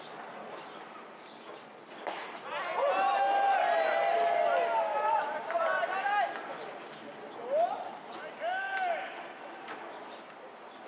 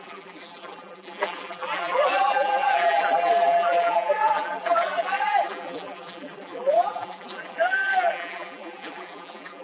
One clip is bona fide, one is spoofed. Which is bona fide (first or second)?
first